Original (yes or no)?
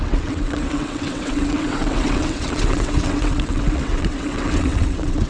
no